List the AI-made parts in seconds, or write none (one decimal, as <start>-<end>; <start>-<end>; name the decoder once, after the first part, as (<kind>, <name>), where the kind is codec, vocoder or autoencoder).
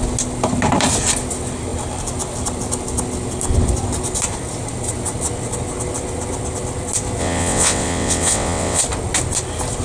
7.2-8.8 (vocoder, WaveNeXt)